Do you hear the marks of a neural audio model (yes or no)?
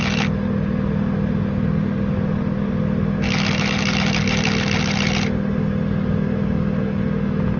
no